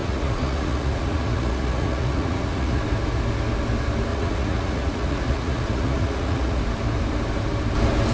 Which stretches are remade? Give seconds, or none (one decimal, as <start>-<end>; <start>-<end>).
0.0-2.8; 4.1-6.6